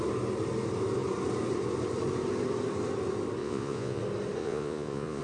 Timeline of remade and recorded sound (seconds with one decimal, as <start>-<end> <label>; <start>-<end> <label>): 0.0-3.4 recorded; 3.4-4.0 remade; 4.0-4.4 recorded; 4.4-5.2 remade